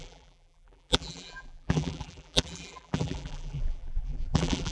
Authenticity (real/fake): fake